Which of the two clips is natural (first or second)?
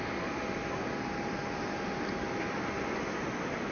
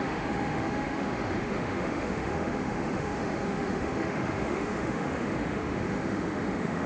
first